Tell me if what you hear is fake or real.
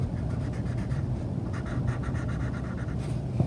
real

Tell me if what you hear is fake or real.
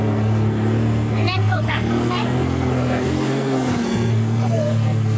fake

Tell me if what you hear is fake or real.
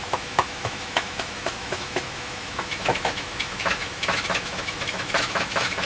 fake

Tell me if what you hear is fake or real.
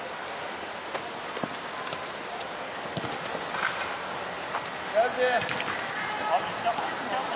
real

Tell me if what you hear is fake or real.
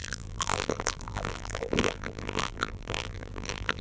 fake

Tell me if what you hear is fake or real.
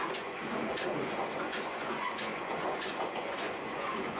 fake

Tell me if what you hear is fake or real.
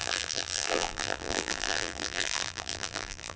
fake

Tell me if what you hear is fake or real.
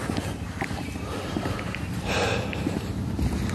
real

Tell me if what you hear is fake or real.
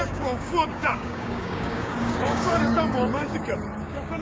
fake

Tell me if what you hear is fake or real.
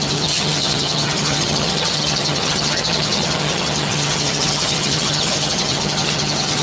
fake